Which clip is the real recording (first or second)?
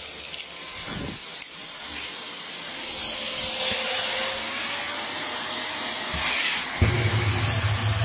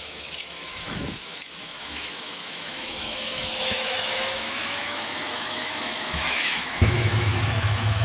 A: first